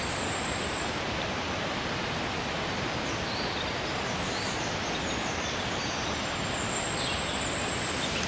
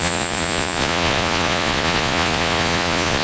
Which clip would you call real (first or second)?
first